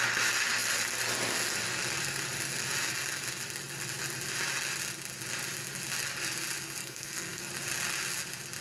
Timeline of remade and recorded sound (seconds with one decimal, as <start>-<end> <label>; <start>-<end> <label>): 0.0-6.8 recorded; 6.8-7.5 remade; 7.5-8.6 recorded